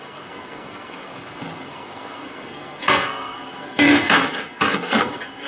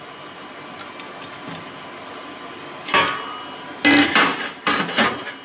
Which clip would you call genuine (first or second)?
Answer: second